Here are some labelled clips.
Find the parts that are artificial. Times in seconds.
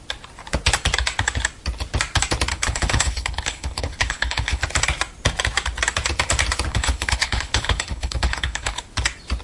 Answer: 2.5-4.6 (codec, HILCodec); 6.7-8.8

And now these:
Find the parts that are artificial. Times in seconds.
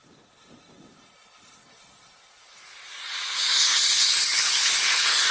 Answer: 3.4-5.3 (codec, HILCodec)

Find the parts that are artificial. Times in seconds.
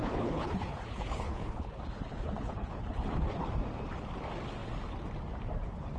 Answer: 0.0-3.4 (codec, HILCodec)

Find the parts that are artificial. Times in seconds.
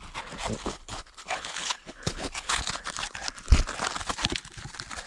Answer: 0.6-2.7 (codec, HILCodec)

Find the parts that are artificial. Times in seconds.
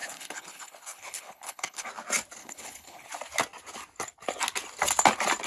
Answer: 0.0-1.9 (codec, HILCodec); 2.4-3.1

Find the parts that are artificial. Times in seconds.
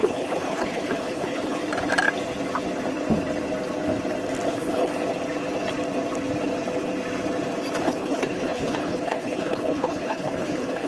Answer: 0.0-1.6 (codec, HILCodec); 4.5-4.9; 7.8-10.9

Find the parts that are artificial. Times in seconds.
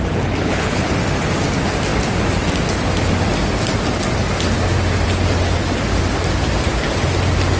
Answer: 0.4-0.9 (codec, HILCodec)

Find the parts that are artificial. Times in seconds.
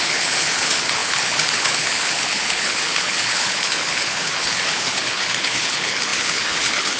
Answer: 0.0-7.0 (codec, HILCodec)